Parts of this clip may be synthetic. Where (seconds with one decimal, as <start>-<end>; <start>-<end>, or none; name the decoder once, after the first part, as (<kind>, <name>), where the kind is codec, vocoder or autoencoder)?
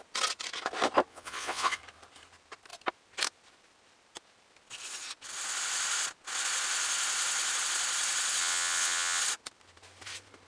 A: 1.1-1.8 (vocoder, WaveNeXt); 8.4-9.2